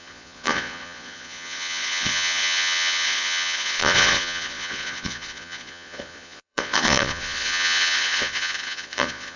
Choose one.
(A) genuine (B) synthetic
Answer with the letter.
B